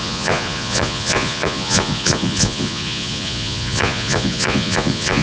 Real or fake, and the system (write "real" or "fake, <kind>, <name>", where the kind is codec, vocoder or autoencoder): fake, vocoder, Vocos